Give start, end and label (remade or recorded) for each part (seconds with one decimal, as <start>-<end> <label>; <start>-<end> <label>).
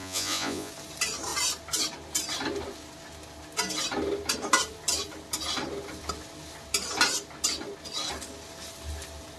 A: 0.0-0.7 remade; 0.7-9.4 recorded